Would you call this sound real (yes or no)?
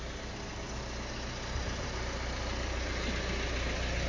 yes